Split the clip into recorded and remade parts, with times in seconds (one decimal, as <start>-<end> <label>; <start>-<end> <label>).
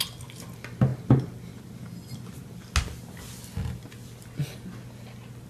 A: 0.0-5.5 recorded